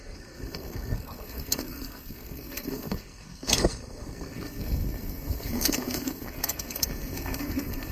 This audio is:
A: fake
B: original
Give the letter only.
A